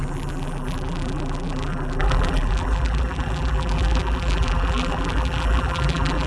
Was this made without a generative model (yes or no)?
no